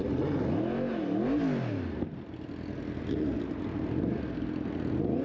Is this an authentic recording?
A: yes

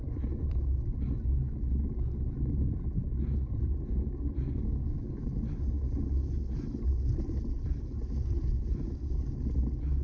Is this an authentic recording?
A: yes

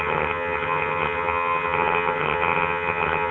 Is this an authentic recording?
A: no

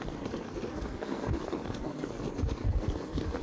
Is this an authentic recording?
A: no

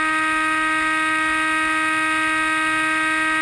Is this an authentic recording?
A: yes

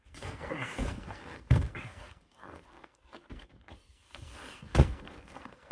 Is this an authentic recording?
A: no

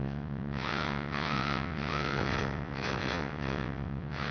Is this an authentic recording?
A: no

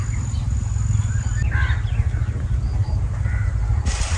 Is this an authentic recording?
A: yes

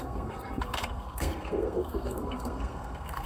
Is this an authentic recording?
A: no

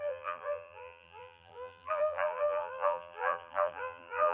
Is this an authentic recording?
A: no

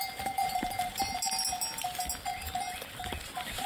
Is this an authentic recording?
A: yes